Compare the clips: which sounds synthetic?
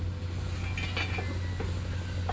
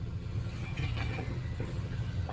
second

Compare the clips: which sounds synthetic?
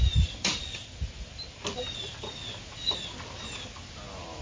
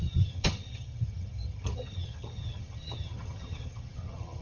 second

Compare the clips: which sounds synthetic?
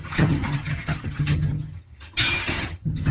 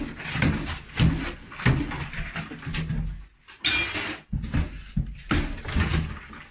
first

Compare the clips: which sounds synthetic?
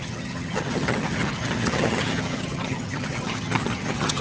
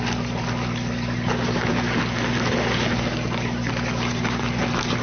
first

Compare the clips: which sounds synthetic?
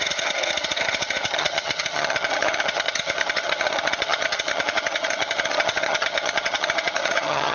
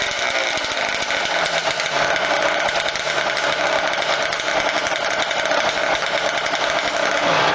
first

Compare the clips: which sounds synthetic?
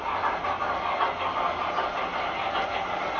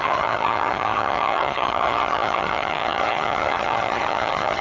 second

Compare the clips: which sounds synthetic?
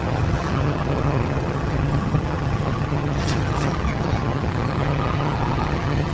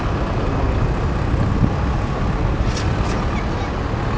first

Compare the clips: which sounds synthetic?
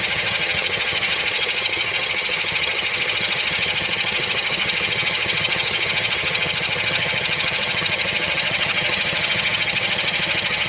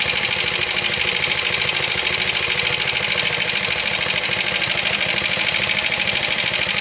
first